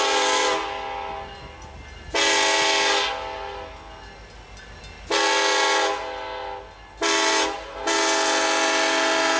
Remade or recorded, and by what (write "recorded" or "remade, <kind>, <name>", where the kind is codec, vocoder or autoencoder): recorded